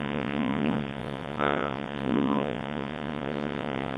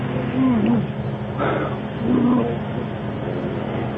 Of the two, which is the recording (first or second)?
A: second